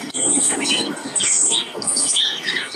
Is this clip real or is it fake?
fake